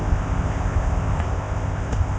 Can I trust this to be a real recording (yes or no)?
no